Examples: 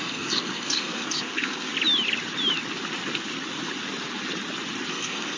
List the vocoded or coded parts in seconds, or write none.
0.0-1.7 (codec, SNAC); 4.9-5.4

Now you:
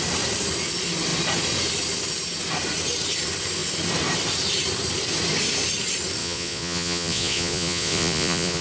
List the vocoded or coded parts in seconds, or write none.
6.2-8.6 (vocoder, Vocos)

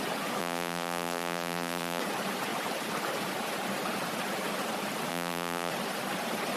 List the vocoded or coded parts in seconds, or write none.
0.4-2.0 (vocoder, BigVGAN v2); 5.1-5.7

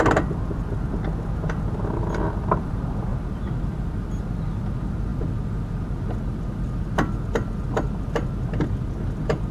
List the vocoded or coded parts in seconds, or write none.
3.1-3.9 (vocoder, BigVGAN v2)